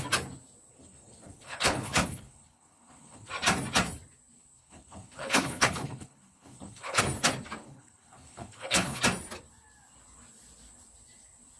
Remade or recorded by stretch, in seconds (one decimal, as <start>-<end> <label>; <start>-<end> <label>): 0.0-0.7 recorded; 0.7-3.3 remade; 3.3-4.6 recorded; 4.6-7.0 remade; 7.0-7.6 recorded; 7.6-9.0 remade; 9.0-11.6 recorded